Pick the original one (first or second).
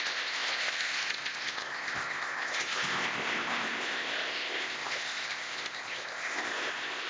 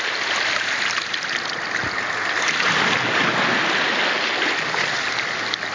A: second